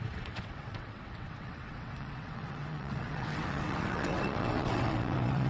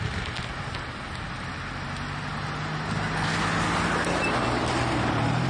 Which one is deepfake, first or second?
first